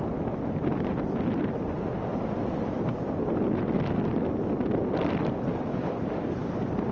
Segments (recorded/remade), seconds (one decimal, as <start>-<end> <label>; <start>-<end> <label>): 0.0-6.9 recorded